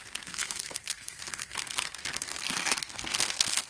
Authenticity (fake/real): fake